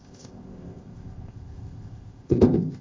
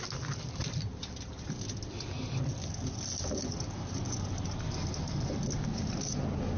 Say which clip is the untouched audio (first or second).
second